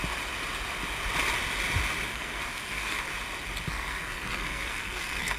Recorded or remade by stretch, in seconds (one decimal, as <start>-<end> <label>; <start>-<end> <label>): 0.0-2.1 recorded; 2.1-3.1 remade; 3.1-3.7 recorded; 3.7-5.4 remade